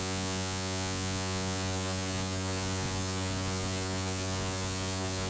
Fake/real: fake